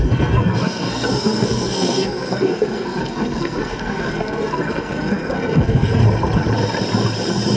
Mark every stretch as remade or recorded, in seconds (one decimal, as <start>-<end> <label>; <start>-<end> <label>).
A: 0.0-6.0 remade; 6.0-7.6 recorded